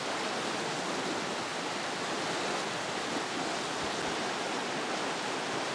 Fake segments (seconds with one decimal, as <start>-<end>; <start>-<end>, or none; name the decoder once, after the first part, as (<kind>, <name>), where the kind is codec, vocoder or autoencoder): none